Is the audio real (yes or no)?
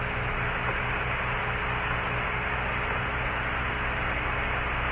yes